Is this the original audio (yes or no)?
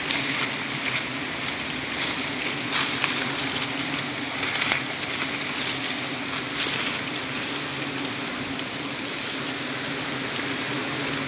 yes